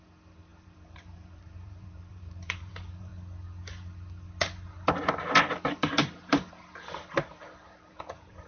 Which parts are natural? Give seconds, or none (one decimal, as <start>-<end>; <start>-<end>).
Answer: 3.1-5.7